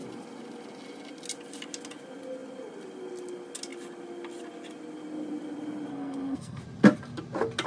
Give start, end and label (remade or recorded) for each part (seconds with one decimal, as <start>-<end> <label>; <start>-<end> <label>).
0.0-5.9 recorded; 5.9-6.6 remade; 6.6-7.7 recorded